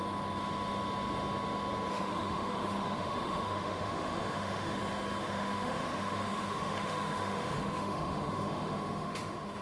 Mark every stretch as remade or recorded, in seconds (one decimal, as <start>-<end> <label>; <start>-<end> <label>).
0.0-1.9 recorded; 1.9-4.8 remade; 4.8-5.2 recorded; 5.2-9.6 remade